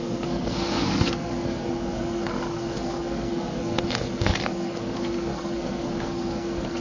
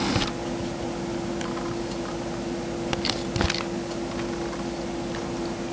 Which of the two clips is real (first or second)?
second